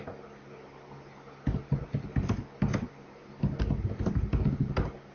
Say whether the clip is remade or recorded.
recorded